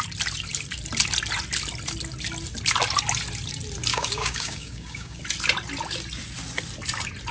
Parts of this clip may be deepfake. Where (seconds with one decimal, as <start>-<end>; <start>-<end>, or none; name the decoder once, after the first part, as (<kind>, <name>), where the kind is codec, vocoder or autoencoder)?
3.9-5.2 (codec, DAC)